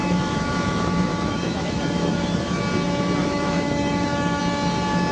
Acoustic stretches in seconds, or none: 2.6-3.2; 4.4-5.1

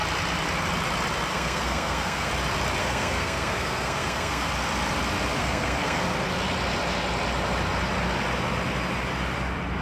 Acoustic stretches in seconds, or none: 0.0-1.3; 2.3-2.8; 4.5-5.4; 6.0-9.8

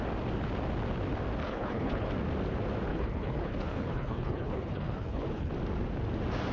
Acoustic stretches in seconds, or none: 0.0-1.4; 2.1-2.9; 5.5-6.5

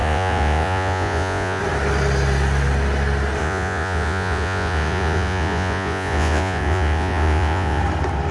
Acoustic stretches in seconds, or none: 1.6-3.4; 7.8-8.3